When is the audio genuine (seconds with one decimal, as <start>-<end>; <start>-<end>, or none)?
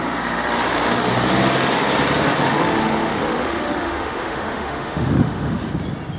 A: 0.0-2.5; 5.7-6.2